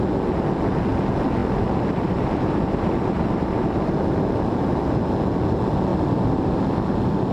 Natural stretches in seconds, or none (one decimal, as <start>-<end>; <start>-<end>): 0.0-1.4; 4.9-5.9